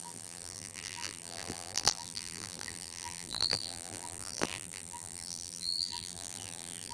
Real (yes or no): no